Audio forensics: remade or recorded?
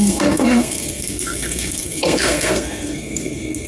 remade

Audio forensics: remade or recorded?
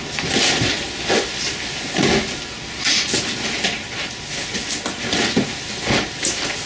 recorded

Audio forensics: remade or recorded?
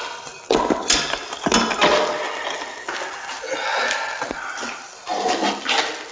recorded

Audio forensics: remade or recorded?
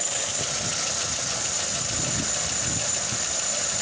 recorded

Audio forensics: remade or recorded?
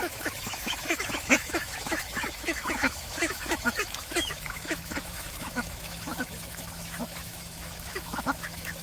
remade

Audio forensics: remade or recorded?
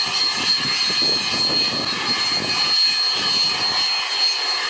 recorded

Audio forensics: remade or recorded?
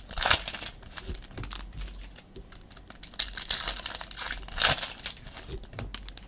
recorded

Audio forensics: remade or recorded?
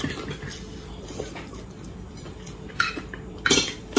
remade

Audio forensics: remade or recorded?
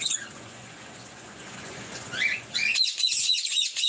remade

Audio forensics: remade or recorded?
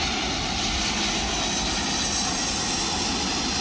recorded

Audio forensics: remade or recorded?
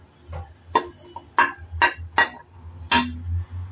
recorded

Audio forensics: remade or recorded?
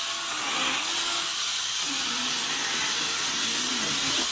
recorded